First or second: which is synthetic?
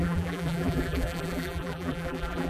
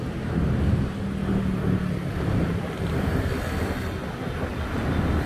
first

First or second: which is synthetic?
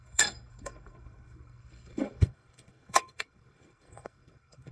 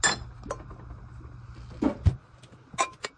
first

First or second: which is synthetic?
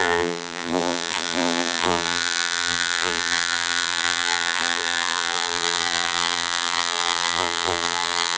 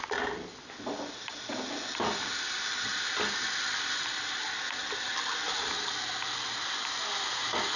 first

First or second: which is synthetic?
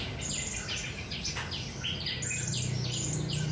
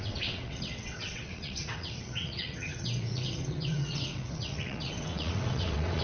second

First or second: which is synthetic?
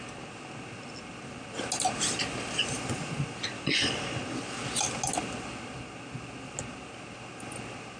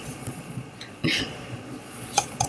second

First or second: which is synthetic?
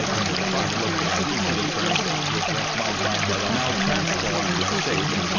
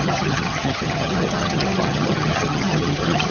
second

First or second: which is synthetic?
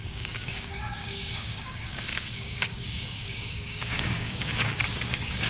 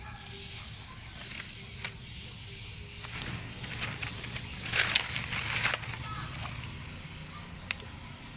first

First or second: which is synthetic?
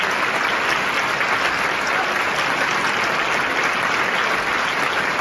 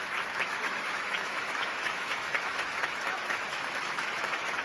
second